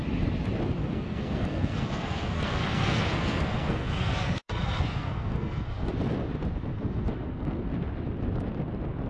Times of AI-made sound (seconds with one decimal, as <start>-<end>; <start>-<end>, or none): 0.8-5.9; 6.7-7.7